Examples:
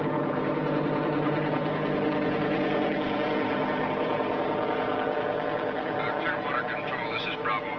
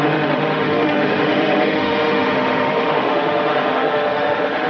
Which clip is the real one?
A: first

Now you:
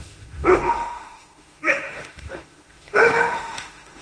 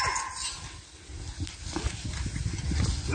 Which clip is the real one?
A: second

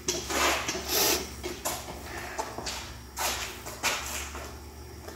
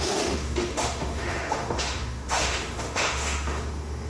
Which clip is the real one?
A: first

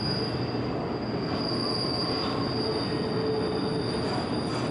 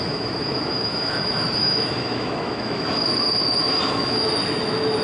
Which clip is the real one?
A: first